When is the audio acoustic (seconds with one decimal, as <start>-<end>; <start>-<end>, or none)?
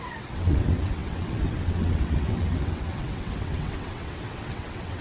none